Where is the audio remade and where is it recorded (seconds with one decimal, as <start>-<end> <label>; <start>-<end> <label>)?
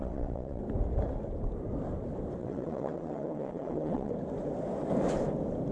0.0-0.6 remade; 0.6-2.4 recorded; 2.4-4.1 remade; 4.1-5.7 recorded